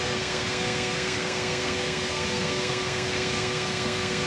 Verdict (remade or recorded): remade